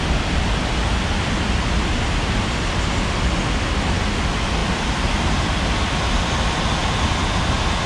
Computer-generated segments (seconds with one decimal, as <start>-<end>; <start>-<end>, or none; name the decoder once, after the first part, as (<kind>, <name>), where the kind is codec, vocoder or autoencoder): none